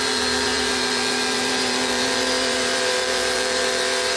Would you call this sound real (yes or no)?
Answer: no